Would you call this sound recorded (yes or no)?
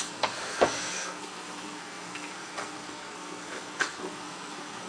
no